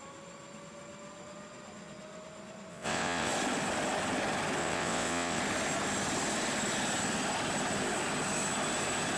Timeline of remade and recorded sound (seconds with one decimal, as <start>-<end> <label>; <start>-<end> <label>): 0.0-2.7 recorded; 2.7-3.3 remade; 3.3-4.6 recorded; 4.6-5.4 remade; 5.4-9.2 recorded